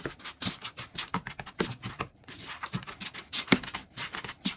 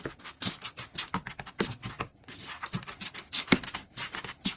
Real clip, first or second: second